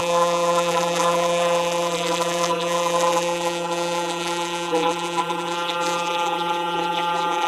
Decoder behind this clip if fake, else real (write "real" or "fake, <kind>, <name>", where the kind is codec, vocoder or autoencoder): fake, vocoder, BigVGAN v2